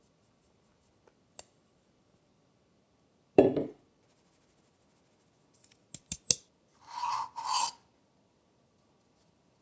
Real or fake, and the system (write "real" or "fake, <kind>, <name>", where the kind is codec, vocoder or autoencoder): real